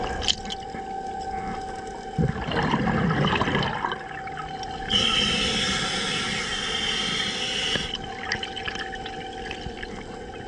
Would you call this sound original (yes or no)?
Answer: yes